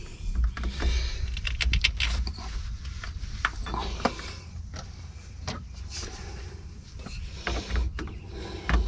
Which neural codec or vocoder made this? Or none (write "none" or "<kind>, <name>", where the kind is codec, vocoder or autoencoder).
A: none